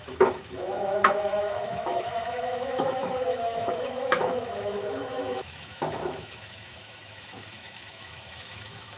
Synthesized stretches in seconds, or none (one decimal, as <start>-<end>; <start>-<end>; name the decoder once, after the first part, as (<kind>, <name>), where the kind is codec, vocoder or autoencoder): 0.0-9.0 (autoencoder, DAC-VAE)